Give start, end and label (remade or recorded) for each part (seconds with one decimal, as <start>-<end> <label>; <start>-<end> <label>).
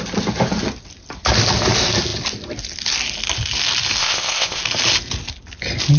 0.0-4.0 recorded; 4.0-4.6 remade; 4.6-6.0 recorded